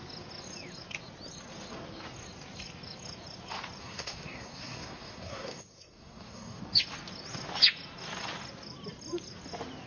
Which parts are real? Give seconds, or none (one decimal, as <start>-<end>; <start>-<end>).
0.0-3.8; 6.6-9.9